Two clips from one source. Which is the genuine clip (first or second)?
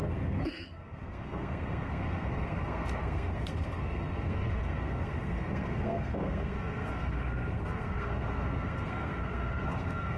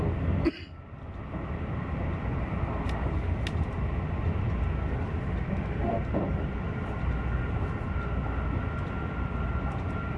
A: second